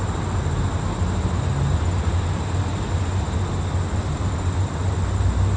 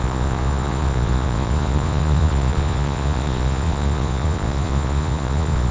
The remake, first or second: second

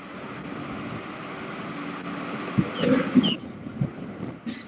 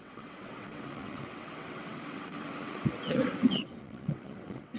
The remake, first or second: second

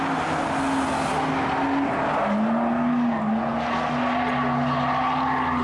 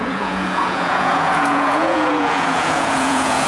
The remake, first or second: second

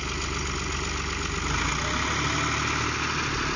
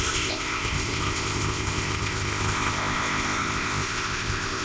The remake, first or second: second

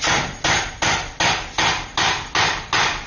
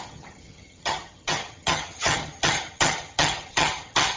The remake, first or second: second